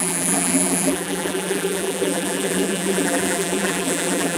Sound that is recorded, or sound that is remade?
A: remade